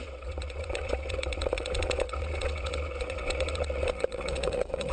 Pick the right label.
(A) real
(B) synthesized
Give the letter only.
B